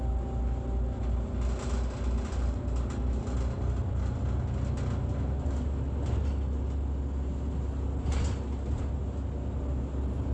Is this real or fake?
real